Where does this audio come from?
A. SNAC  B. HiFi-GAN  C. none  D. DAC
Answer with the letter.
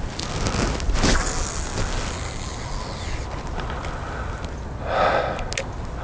C